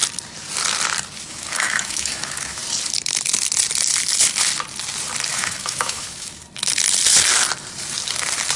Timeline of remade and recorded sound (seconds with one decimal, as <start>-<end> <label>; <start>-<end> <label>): 0.0-1.3 recorded; 1.3-2.6 remade; 2.6-5.3 recorded; 5.3-6.4 remade; 6.4-8.6 recorded